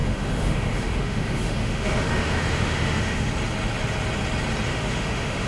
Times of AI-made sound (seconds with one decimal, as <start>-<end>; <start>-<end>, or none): 0.0-3.3; 4.7-5.5